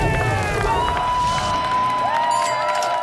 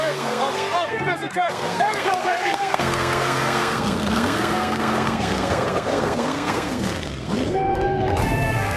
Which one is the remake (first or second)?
second